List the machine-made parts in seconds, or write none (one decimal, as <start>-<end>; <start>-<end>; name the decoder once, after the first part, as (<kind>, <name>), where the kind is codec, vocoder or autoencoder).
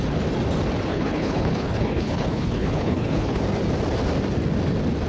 0.9-3.4 (codec, HILCodec)